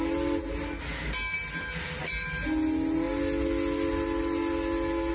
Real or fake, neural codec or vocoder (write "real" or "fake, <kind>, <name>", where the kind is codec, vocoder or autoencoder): real